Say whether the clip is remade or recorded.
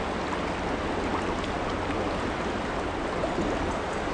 recorded